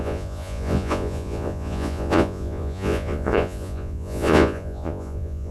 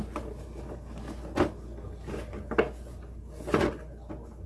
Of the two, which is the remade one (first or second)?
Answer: first